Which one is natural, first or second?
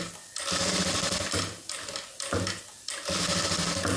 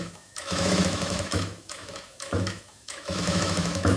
first